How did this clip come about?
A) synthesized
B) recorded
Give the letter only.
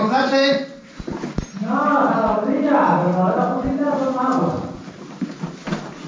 B